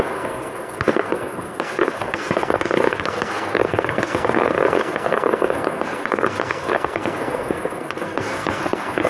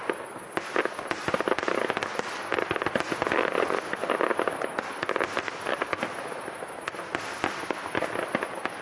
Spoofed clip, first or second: first